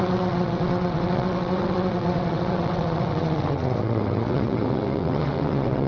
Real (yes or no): no